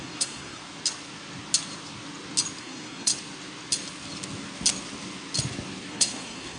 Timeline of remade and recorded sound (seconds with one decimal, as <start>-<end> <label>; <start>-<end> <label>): 0.0-0.6 remade; 0.6-2.6 recorded; 2.6-3.1 remade; 3.1-5.9 recorded; 5.9-6.6 remade